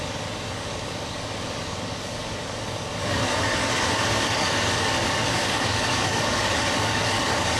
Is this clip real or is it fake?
fake